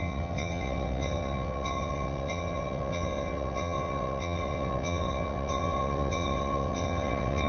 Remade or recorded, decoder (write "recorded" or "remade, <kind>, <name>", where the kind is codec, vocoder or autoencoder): remade, vocoder, WaveNeXt